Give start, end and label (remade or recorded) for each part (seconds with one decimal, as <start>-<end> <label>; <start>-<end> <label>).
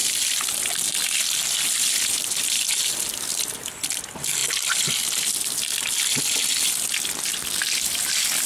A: 0.0-8.5 recorded